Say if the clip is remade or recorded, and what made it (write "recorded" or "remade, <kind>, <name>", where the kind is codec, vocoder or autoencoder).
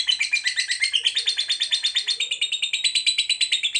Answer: remade, vocoder, BigVGAN v2